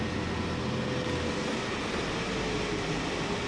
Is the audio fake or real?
real